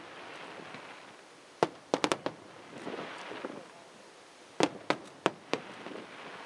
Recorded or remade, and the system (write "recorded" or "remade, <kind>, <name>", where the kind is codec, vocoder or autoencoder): recorded